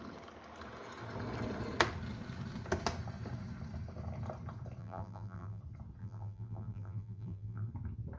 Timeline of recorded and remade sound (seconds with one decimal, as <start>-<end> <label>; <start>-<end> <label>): 0.0-4.8 recorded; 4.8-5.6 remade; 5.6-6.0 recorded; 6.0-7.7 remade; 7.7-8.2 recorded